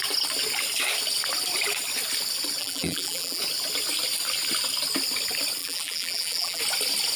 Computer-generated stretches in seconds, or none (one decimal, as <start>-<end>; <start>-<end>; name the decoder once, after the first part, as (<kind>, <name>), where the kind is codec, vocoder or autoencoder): 2.6-3.4 (vocoder, BigVGAN v2); 5.6-6.6